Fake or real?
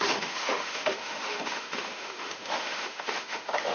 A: fake